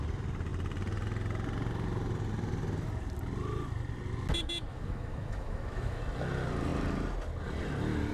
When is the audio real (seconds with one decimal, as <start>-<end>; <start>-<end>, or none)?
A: 0.0-4.7; 6.0-8.1